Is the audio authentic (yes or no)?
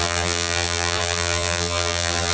no